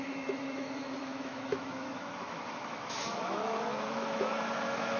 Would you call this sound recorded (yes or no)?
no